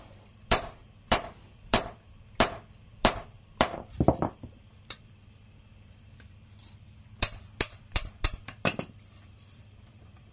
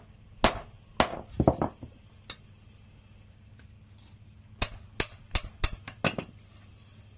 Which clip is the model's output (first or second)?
first